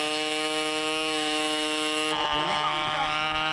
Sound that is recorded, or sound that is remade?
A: remade